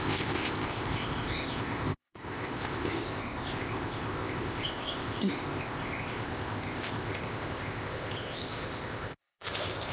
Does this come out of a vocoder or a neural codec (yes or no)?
yes